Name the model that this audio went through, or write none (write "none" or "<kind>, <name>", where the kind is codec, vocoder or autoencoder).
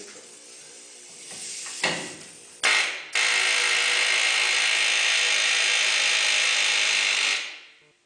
none